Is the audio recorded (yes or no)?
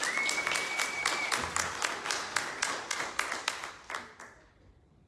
yes